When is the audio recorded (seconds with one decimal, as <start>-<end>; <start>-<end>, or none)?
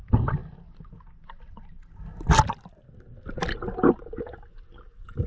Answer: 0.0-5.3